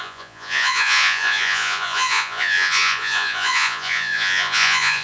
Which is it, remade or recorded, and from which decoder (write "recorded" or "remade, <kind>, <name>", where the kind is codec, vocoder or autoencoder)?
remade, vocoder, Vocos